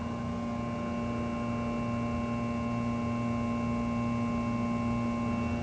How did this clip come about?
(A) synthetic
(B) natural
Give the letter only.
B